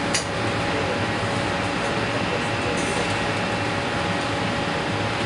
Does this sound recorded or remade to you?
recorded